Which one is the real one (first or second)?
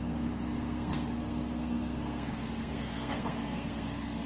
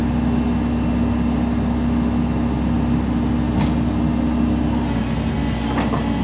second